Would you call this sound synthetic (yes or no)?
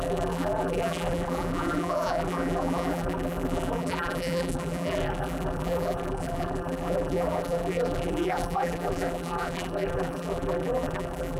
yes